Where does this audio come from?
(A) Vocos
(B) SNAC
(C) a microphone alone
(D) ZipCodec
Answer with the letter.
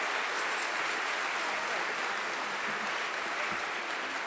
C